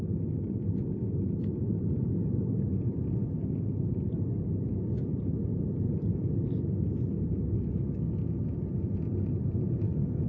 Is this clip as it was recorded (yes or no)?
yes